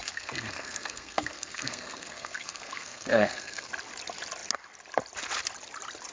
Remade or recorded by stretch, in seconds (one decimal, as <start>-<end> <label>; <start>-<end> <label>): 0.0-3.7 remade; 3.7-6.1 recorded